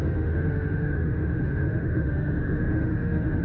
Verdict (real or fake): fake